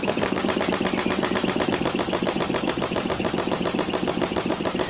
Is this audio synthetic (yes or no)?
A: no